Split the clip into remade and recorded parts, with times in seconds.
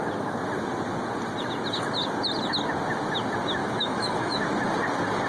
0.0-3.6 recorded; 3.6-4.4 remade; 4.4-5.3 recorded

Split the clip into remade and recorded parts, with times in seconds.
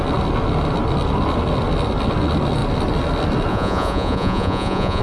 0.0-3.5 recorded; 3.5-5.0 remade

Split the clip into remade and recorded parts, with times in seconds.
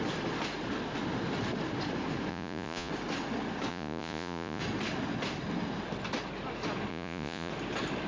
0.0-2.3 recorded; 2.3-2.9 remade; 2.9-3.7 recorded; 3.7-4.6 remade; 4.6-6.9 recorded; 6.9-7.5 remade; 7.5-8.1 recorded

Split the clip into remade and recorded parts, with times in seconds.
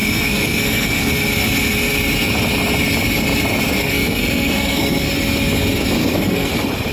0.0-1.1 remade; 1.1-3.8 recorded; 3.8-5.1 remade; 5.1-6.0 recorded; 6.0-6.5 remade; 6.5-6.9 recorded